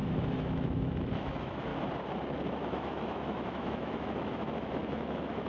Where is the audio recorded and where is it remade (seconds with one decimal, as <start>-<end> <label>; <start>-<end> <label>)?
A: 0.0-1.7 remade; 1.7-2.5 recorded; 2.5-5.5 remade